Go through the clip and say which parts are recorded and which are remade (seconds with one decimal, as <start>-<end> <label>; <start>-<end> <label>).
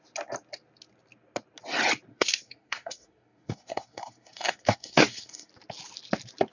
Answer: 0.0-2.1 recorded; 2.1-5.5 remade; 5.5-6.5 recorded